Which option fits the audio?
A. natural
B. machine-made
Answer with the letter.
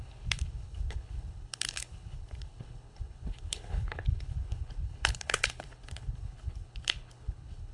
B